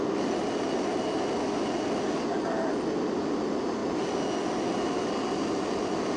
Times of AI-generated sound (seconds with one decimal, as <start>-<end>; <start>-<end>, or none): none